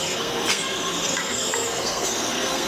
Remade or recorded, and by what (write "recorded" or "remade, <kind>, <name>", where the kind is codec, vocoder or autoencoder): remade, codec, SNAC